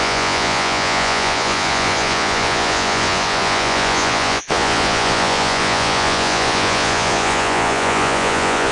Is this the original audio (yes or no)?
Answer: no